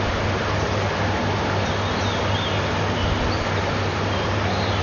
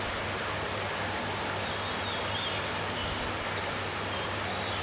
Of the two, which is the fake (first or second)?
first